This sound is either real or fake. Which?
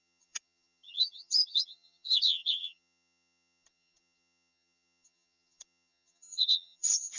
fake